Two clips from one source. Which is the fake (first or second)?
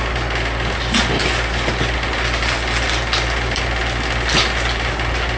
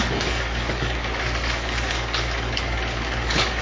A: second